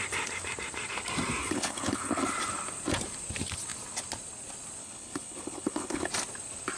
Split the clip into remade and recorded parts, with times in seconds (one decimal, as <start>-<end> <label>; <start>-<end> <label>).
0.0-1.4 recorded; 1.4-2.2 remade; 2.2-4.8 recorded; 4.8-6.1 remade; 6.1-6.8 recorded